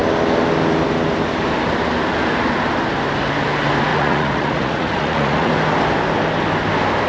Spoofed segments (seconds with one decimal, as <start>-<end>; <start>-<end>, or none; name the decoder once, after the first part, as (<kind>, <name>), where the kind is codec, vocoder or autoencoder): 3.9-5.5 (vocoder, Vocos)